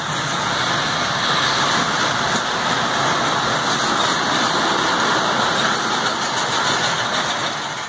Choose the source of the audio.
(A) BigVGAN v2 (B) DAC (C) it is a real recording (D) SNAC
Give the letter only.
C